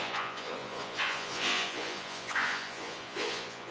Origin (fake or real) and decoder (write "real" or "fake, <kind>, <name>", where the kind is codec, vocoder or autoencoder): fake, vocoder, Vocos